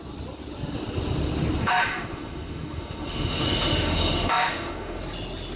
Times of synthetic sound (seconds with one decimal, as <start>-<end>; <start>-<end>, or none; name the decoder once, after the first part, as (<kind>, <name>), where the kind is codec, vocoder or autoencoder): 1.6-5.0 (autoencoder, DAC-VAE)